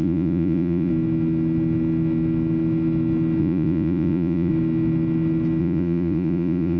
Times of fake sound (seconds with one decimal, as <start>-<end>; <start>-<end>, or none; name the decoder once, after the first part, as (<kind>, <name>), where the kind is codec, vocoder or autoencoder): 0.0-0.9 (vocoder, Vocos); 3.4-4.5; 5.6-6.8